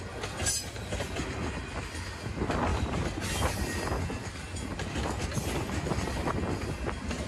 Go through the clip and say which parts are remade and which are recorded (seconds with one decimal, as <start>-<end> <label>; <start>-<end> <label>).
0.0-7.3 recorded